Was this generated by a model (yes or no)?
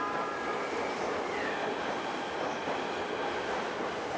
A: no